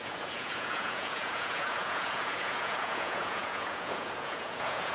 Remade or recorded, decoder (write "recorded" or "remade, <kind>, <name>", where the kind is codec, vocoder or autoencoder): remade, vocoder, Vocos